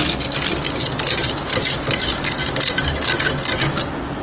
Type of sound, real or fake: real